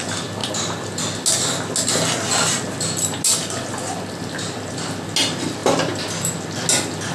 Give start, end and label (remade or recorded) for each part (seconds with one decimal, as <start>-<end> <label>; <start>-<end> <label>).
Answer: 0.0-7.1 recorded